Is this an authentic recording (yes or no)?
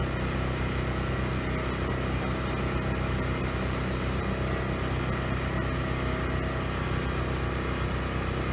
yes